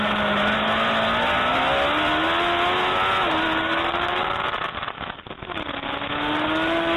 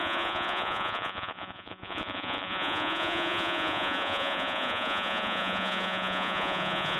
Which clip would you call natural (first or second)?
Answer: first